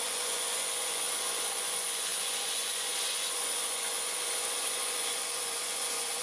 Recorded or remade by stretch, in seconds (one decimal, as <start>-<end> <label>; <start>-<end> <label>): 0.0-6.2 remade